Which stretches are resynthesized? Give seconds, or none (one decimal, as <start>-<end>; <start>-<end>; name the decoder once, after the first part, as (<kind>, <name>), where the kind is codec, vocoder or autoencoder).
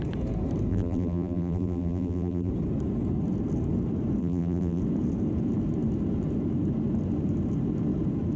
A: 0.7-2.5 (vocoder, BigVGAN v2); 4.2-4.8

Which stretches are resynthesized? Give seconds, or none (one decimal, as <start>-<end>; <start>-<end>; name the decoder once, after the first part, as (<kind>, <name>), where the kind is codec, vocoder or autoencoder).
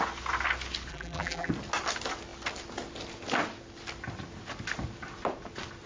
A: 0.9-1.5 (vocoder, BigVGAN v2)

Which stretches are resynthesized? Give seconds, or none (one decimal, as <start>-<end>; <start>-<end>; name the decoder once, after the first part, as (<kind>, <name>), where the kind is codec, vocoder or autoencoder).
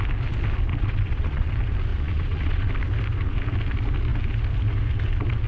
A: 0.7-1.5 (vocoder, Vocos); 1.9-2.7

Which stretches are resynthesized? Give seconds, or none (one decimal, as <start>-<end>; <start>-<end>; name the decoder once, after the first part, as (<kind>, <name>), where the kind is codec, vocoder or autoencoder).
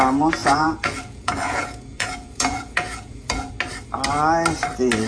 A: 0.4-3.5 (vocoder, Vocos)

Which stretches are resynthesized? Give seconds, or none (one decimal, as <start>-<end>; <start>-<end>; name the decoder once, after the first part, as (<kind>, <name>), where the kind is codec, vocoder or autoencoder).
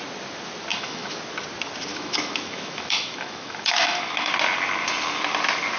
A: 0.7-1.2 (autoencoder, DAC-VAE); 1.9-4.3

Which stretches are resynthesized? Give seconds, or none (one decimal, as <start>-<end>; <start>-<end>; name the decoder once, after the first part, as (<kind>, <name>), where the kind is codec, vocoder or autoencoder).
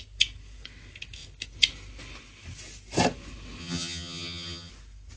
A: 3.6-4.7 (vocoder, HiFi-GAN)